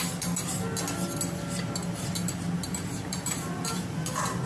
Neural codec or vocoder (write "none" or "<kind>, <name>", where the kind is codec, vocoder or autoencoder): none